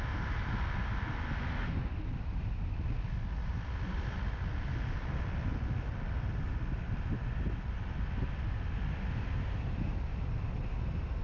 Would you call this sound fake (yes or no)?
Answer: no